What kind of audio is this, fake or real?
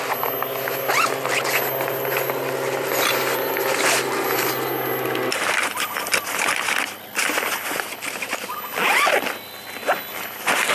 real